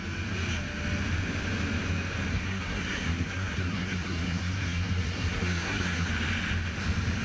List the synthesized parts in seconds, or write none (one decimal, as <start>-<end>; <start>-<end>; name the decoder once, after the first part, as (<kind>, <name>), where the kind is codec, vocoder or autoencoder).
2.3-6.1 (codec, SNAC)